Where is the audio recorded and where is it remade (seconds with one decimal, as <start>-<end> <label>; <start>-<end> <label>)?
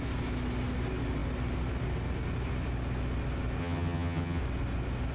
0.0-3.6 recorded; 3.6-4.4 remade; 4.4-5.1 recorded